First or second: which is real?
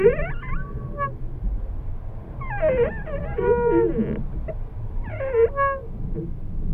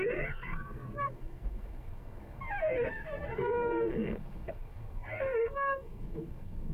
first